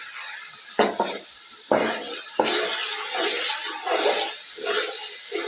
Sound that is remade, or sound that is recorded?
recorded